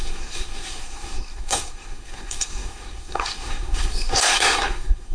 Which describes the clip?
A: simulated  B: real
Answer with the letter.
A